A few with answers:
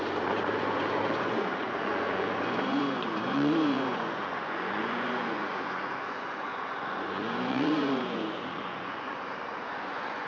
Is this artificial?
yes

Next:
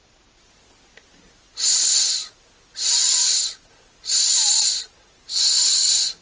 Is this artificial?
no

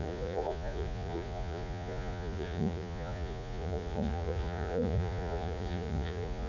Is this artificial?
yes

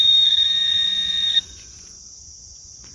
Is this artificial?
yes